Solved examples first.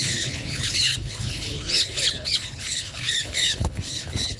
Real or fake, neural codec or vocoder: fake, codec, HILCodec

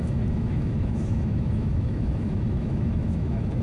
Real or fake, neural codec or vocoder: fake, autoencoder, DAC-VAE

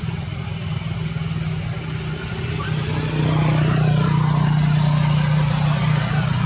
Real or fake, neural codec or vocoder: real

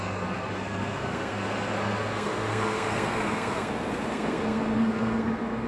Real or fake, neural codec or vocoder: fake, codec, SNAC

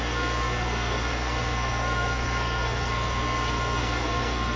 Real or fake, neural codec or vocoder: fake, codec, SNAC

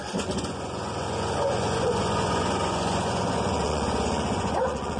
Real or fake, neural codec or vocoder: fake, vocoder, Vocos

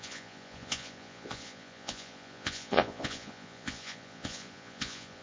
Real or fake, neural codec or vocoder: fake, vocoder, Vocos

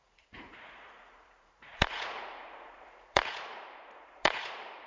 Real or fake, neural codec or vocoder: fake, vocoder, Vocos